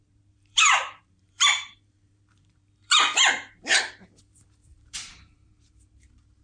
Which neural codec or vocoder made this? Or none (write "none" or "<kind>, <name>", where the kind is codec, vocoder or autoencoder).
vocoder, BigVGAN v2